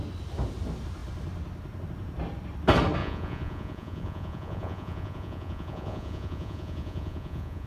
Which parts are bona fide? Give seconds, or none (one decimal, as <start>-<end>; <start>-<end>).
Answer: 0.0-3.0